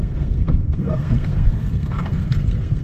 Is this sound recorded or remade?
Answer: remade